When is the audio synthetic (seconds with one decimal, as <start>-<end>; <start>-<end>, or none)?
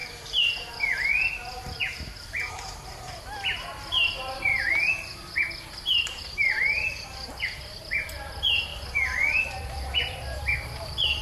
0.0-4.5; 5.7-8.7; 9.4-11.2